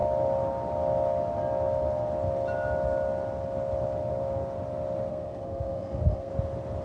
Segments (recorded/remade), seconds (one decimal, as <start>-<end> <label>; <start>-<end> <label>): 0.0-5.1 recorded; 5.1-6.3 remade; 6.3-6.8 recorded

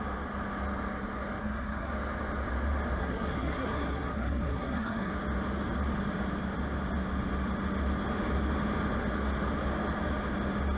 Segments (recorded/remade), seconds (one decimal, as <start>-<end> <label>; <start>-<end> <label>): 0.0-1.4 recorded; 1.4-1.9 remade; 1.9-3.0 recorded; 3.0-5.1 remade; 5.1-10.8 recorded

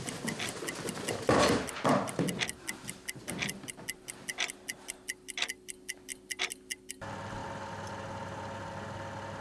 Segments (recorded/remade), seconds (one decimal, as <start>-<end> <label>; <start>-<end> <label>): 0.0-9.4 recorded

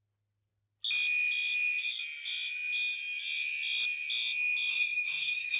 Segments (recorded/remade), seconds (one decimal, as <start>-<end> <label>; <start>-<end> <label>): 0.0-4.7 recorded; 4.7-5.6 remade

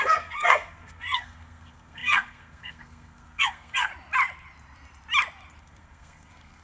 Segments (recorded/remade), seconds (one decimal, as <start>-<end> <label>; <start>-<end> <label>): 0.0-3.9 remade; 3.9-5.6 recorded; 5.6-6.6 remade

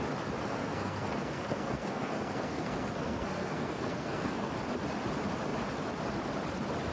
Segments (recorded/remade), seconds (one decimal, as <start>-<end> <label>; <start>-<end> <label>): 0.0-0.4 recorded; 0.4-4.5 remade; 4.5-6.9 recorded

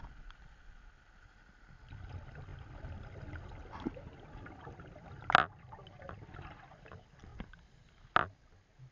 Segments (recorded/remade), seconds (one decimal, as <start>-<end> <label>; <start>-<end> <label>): 0.0-8.9 recorded